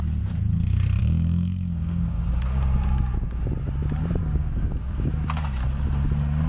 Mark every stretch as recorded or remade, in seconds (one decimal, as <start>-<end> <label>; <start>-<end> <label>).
0.0-1.0 recorded; 1.0-3.5 remade; 3.5-4.2 recorded; 4.2-5.1 remade; 5.1-6.5 recorded